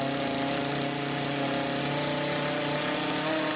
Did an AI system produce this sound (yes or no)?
no